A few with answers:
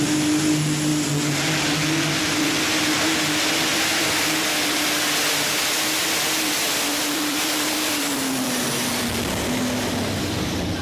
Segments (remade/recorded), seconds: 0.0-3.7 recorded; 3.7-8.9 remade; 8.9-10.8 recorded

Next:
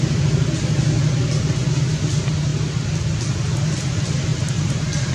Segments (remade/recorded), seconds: 0.0-4.3 recorded; 4.3-5.1 remade